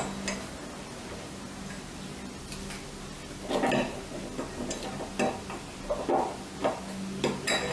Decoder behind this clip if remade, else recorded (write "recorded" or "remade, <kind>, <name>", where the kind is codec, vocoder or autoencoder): recorded